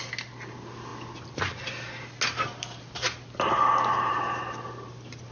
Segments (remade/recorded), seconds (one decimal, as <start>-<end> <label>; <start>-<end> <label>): 0.0-5.3 recorded